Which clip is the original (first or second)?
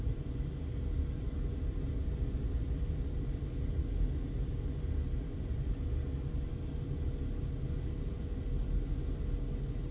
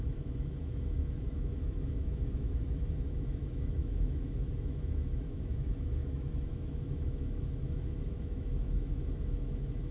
first